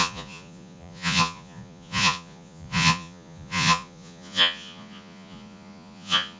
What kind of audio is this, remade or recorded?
remade